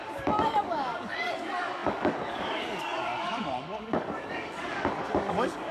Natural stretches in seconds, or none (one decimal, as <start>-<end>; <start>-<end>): none